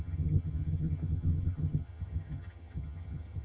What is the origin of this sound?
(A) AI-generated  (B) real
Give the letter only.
A